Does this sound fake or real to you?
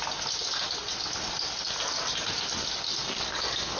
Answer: real